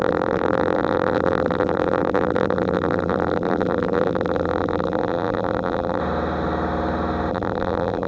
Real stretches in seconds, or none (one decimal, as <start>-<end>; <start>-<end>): 6.0-7.3